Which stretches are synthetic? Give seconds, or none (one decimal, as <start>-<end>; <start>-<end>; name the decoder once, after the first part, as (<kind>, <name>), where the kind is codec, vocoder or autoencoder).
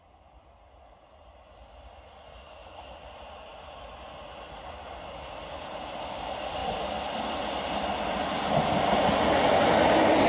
none